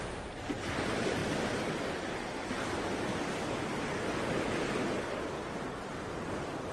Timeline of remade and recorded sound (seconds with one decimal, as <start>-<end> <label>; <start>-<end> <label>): 0.0-6.7 recorded